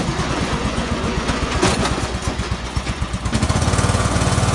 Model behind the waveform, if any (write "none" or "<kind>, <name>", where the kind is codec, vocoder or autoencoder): vocoder, Vocos